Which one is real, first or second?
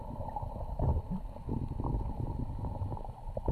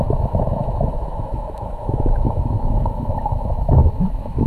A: first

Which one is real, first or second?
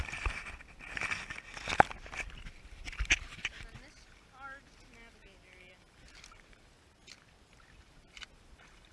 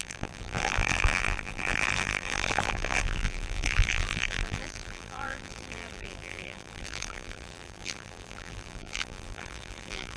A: first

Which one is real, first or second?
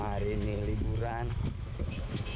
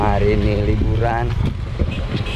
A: second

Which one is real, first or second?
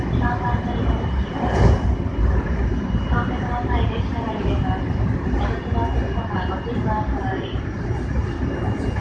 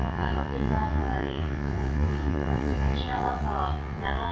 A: first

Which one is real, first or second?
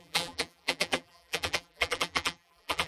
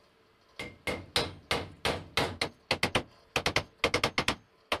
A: second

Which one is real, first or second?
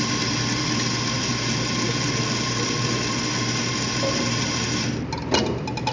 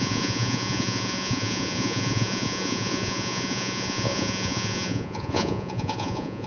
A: first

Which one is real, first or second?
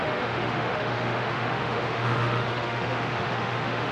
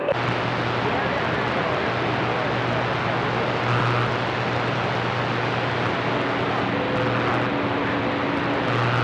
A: second